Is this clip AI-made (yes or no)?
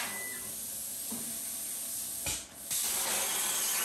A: no